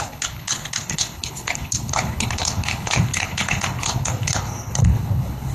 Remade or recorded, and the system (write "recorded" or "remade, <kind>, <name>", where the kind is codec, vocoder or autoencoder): remade, codec, HILCodec